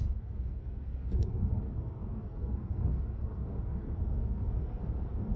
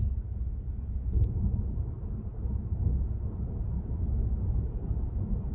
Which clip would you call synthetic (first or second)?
first